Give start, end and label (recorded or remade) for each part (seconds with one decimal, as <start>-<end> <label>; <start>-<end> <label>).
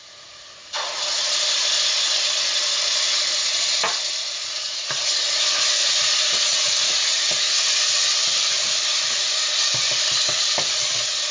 0.0-4.4 recorded; 4.4-7.3 remade; 7.3-8.9 recorded; 8.9-9.5 remade; 9.5-11.3 recorded